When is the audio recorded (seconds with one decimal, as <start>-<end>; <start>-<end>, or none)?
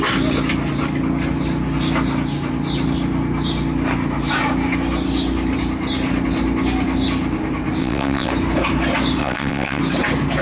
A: 0.0-7.8; 8.3-9.2; 9.8-10.4